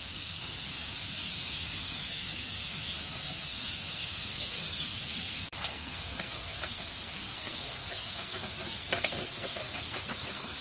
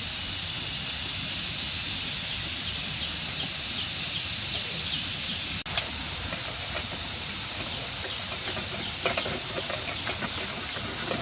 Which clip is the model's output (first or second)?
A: first